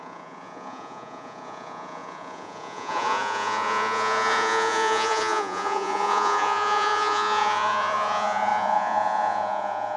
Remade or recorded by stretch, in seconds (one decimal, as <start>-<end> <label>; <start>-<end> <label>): 0.0-10.0 remade